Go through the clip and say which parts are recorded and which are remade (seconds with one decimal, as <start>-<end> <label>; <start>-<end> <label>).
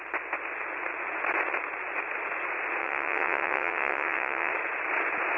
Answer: 0.0-2.8 recorded; 2.8-4.5 remade; 4.5-5.4 recorded